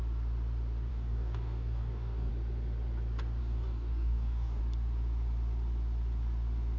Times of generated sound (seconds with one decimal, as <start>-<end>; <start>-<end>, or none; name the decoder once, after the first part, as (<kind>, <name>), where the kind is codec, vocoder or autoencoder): 0.9-2.3 (codec, DAC); 3.4-4.6